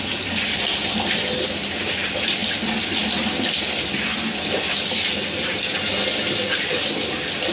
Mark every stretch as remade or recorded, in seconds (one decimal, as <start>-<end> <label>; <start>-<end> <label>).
0.0-7.5 recorded